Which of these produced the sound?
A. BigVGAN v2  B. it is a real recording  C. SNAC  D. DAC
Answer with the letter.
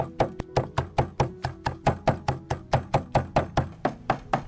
B